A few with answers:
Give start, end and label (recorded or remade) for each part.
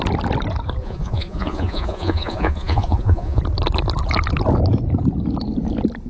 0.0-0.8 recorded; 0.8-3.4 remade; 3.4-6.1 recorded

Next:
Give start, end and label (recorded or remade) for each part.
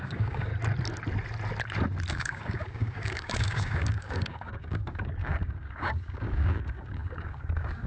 0.0-0.5 remade; 0.5-2.1 recorded; 2.1-7.9 remade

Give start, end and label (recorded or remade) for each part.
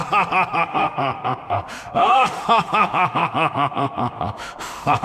0.0-0.6 recorded; 0.6-5.0 remade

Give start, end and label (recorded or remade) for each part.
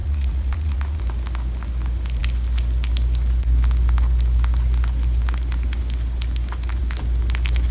0.0-1.0 remade; 1.0-7.7 recorded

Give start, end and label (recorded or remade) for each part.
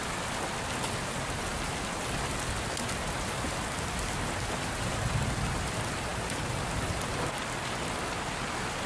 0.0-8.9 recorded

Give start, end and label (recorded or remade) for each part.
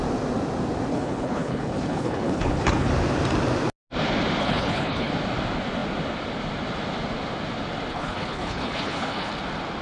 0.0-0.9 recorded; 0.9-2.9 remade; 2.9-4.4 recorded; 4.4-5.1 remade; 5.1-7.9 recorded; 7.9-9.3 remade; 9.3-9.8 recorded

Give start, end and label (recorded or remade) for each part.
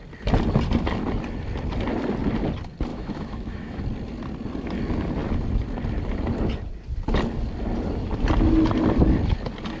0.0-2.9 recorded; 2.9-3.8 remade; 3.8-9.8 recorded